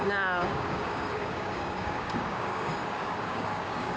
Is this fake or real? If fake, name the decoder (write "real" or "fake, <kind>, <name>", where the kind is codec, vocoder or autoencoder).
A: fake, codec, DAC